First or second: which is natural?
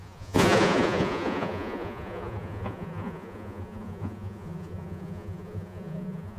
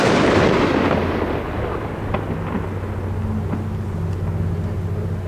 second